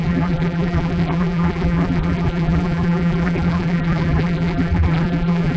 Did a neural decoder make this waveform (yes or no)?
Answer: yes